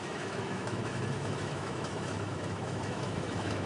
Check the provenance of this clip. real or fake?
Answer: fake